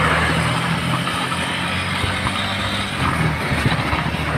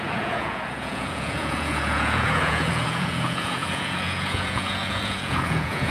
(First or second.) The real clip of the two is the first